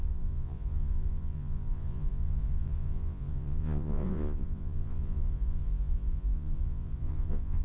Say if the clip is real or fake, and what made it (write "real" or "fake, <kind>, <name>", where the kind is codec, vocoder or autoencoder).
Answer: fake, vocoder, Vocos